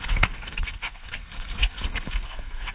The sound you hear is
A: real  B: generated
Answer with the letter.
B